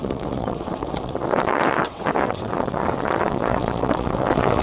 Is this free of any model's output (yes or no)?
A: no